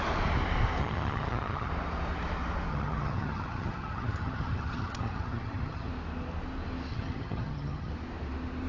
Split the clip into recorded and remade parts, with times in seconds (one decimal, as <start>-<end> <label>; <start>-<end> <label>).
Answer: 0.0-0.8 recorded; 0.8-1.7 remade; 1.7-2.7 recorded; 2.7-5.9 remade; 5.9-6.9 recorded; 6.9-7.9 remade; 7.9-8.7 recorded

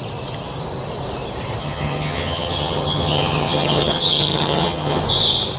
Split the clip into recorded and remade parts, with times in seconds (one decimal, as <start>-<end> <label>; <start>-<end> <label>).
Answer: 0.0-1.6 recorded; 1.6-5.0 remade; 5.0-5.6 recorded

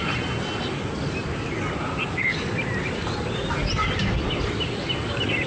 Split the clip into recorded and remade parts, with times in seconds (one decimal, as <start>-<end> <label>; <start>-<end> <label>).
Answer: 0.0-5.5 recorded

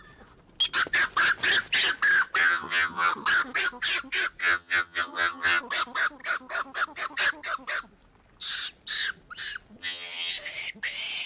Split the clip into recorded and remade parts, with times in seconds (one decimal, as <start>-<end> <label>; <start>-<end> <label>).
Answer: 0.0-2.4 recorded; 2.4-3.1 remade; 3.1-4.4 recorded; 4.4-5.6 remade; 5.6-9.8 recorded; 9.8-10.3 remade; 10.3-11.3 recorded

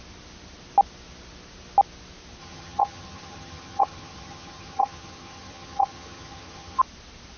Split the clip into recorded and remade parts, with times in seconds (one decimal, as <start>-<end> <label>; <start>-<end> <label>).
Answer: 0.0-2.4 recorded; 2.4-6.8 remade; 6.8-7.4 recorded